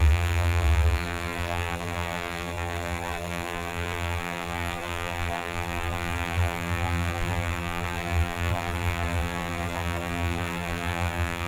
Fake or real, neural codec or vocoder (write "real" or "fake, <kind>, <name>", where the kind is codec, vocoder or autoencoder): fake, vocoder, BigVGAN v2